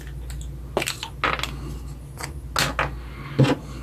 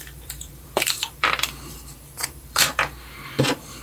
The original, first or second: first